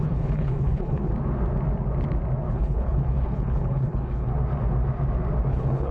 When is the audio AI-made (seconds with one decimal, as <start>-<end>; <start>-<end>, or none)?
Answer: 0.0-1.1; 2.5-4.3; 5.5-5.9